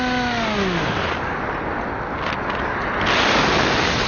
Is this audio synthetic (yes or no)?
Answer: no